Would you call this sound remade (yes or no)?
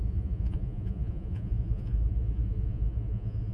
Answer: yes